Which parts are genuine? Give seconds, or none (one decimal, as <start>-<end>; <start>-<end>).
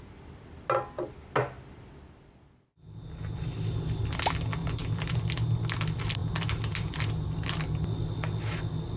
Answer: 0.0-4.6; 5.2-9.0